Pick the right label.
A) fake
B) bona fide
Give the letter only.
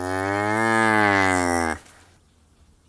B